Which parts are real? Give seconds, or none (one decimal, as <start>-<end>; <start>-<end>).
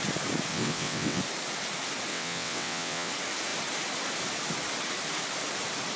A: 0.0-0.5; 1.2-2.1; 3.1-6.0